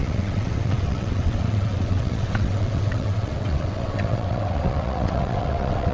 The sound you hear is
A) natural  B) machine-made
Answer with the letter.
B